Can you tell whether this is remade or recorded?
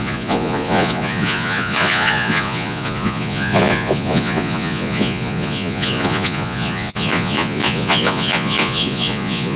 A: remade